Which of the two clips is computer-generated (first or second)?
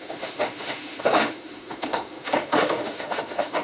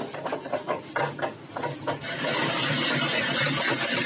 first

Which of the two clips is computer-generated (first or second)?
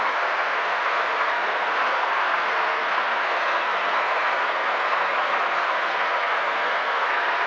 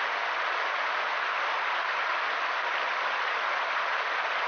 first